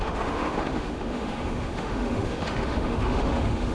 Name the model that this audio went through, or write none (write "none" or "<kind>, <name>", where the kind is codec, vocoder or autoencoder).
autoencoder, DAC-VAE